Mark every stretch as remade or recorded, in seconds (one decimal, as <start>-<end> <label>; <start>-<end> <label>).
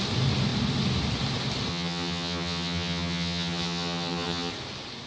0.0-1.7 recorded; 1.7-4.5 remade; 4.5-5.1 recorded